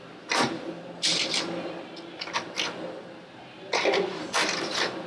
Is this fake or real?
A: fake